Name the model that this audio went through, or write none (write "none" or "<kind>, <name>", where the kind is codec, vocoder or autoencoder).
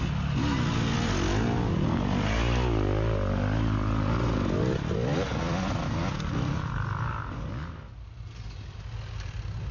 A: none